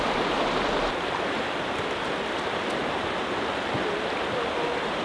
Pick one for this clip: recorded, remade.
recorded